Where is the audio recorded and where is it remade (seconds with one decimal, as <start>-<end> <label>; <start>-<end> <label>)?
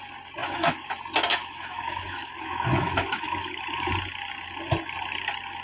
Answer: 0.0-0.4 recorded; 0.4-0.9 remade; 0.9-1.3 recorded; 1.3-3.9 remade; 3.9-5.6 recorded